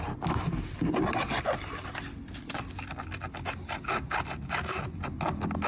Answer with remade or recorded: recorded